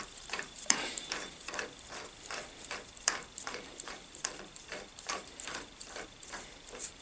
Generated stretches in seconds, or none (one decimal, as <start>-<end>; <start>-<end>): 0.0-1.4; 3.0-7.0